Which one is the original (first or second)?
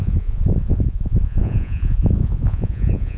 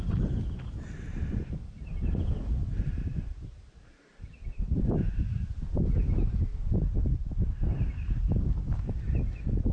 second